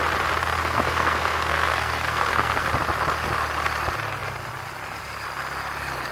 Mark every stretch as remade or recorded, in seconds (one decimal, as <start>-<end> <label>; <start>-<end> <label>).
0.0-0.6 recorded; 0.6-2.7 remade; 2.7-6.1 recorded